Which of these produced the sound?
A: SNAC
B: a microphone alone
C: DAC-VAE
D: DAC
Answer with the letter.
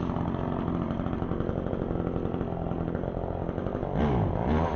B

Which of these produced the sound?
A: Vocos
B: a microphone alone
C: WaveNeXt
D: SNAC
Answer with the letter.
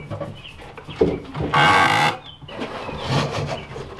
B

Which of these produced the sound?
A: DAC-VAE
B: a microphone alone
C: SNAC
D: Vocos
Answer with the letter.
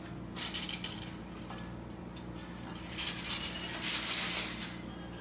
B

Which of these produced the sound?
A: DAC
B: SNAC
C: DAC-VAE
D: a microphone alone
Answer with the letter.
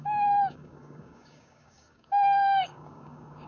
A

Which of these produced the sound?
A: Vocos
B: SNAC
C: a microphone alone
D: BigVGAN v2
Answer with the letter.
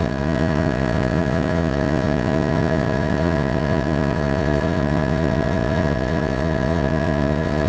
A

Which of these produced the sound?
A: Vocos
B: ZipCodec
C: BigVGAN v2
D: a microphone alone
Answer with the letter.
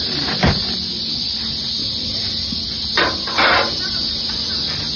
D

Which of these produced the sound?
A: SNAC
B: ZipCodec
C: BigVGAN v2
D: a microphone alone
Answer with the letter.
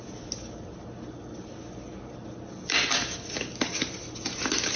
D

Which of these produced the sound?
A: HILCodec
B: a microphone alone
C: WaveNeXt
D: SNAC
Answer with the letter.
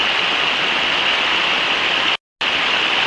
B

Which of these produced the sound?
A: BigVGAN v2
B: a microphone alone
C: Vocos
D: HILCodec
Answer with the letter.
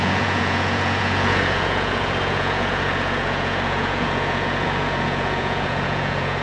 C